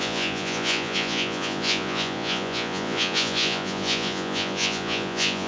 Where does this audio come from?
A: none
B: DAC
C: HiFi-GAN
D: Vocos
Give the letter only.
D